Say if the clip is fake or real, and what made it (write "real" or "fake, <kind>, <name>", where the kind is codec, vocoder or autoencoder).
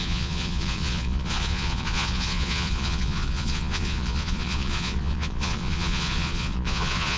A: fake, vocoder, Vocos